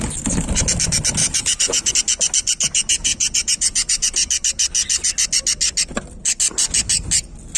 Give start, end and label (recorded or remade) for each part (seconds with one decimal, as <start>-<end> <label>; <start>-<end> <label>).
0.0-1.2 recorded; 1.2-1.9 remade; 1.9-3.0 recorded; 3.0-4.3 remade; 4.3-7.6 recorded